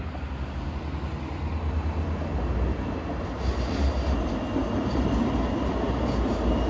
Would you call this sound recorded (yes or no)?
yes